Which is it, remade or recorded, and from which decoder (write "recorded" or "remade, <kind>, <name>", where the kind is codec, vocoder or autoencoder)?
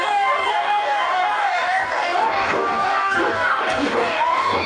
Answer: remade, codec, DAC